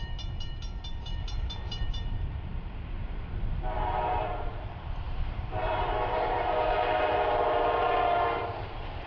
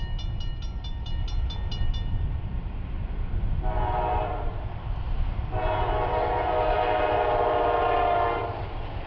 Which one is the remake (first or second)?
first